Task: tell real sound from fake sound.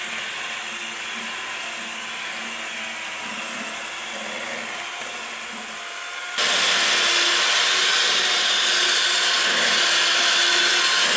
real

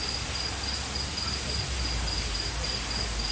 real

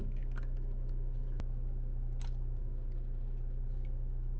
real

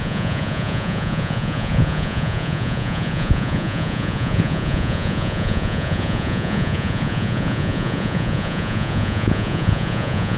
fake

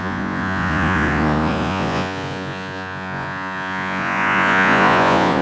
fake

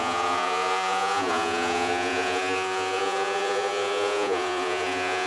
fake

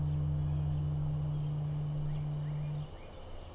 real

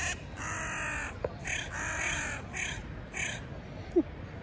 real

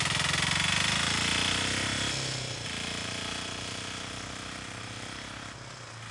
real